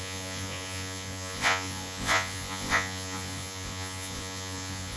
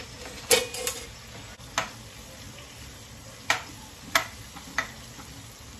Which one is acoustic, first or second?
second